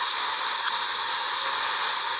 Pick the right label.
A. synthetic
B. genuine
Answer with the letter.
B